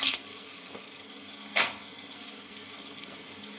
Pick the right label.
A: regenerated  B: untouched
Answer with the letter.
A